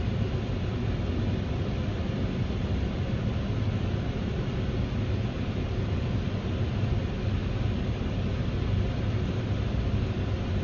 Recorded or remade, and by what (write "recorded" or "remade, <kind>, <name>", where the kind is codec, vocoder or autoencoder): recorded